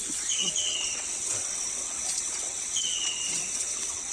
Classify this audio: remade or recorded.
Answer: remade